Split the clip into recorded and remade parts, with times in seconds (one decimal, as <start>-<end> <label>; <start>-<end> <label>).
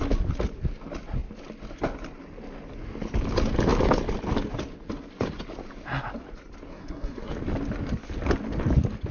0.0-6.7 recorded; 6.7-7.3 remade; 7.3-9.1 recorded